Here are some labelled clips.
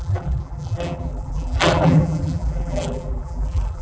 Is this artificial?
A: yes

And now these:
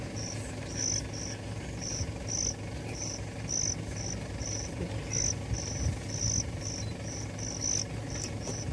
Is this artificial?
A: no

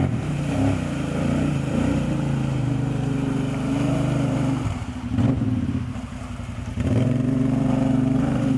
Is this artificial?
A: yes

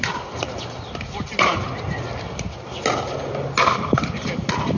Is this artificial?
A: no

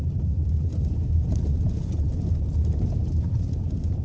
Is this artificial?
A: yes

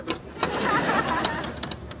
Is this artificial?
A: yes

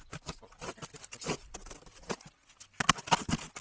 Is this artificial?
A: no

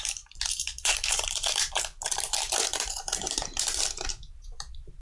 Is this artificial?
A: yes